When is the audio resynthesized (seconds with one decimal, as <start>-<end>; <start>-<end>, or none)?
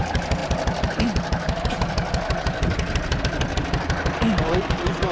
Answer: none